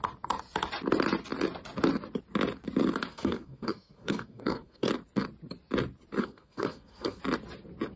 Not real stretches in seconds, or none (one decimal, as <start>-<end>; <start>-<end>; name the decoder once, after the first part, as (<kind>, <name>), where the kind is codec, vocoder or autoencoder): 3.1-4.9 (codec, SNAC); 6.2-7.2